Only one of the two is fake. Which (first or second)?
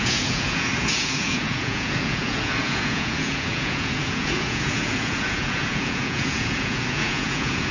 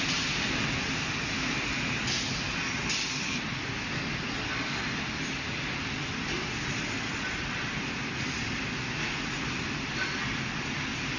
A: first